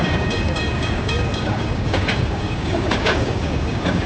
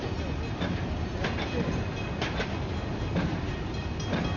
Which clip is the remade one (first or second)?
first